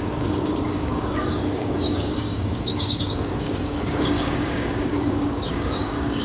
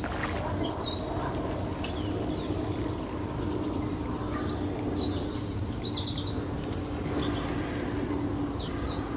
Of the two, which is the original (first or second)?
second